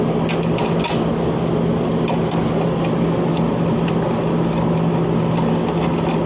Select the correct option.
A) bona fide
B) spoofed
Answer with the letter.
A